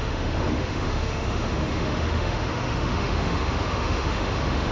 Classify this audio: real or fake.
fake